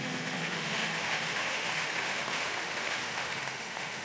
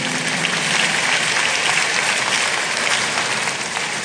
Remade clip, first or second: first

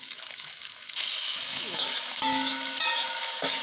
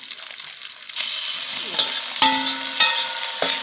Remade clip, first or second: first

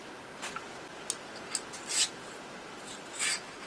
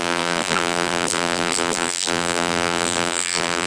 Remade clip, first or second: second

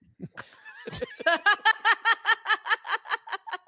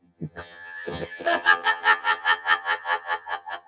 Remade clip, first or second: second